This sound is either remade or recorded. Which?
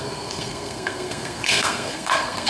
remade